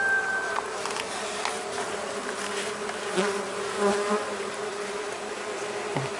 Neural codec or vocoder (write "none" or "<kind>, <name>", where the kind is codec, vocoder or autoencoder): none